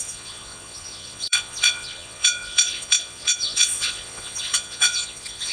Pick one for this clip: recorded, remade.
remade